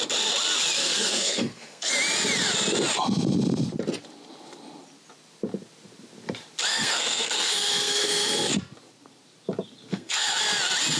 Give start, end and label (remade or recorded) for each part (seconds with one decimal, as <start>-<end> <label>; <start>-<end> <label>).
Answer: 0.0-0.8 recorded; 0.8-1.9 remade; 1.9-6.7 recorded; 6.7-8.5 remade; 8.5-9.9 recorded; 9.9-10.4 remade; 10.4-11.0 recorded